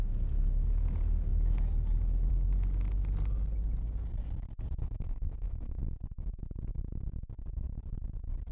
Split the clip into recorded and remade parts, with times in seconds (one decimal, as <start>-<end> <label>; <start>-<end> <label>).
0.0-4.8 recorded; 4.8-5.8 remade; 5.8-8.5 recorded